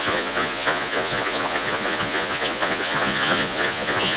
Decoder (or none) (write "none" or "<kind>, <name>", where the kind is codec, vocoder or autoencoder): vocoder, Vocos